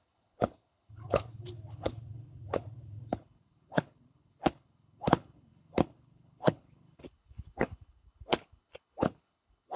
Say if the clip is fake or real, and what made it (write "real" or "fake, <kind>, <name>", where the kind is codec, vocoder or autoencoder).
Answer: fake, codec, HILCodec